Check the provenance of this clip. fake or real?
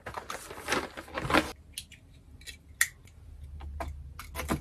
real